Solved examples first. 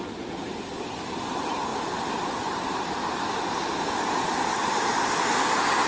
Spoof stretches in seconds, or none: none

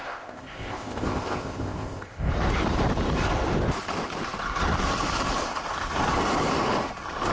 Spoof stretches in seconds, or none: 0.0-2.3 (codec, ZipCodec)

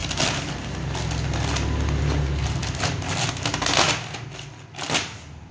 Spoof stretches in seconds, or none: none

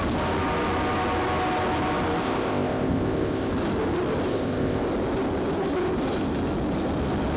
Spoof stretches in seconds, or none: 2.2-3.5 (codec, ZipCodec); 4.3-4.8

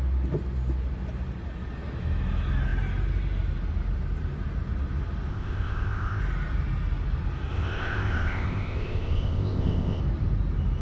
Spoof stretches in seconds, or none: 5.3-6.2 (codec, ZipCodec); 7.5-10.0